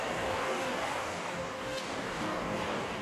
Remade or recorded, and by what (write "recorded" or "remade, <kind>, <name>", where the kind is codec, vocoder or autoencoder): remade, codec, DAC